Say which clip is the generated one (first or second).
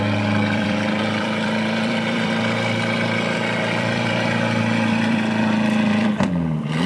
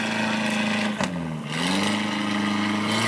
first